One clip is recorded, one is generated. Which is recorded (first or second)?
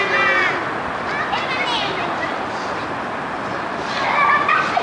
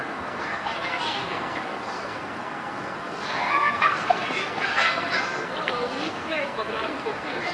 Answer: first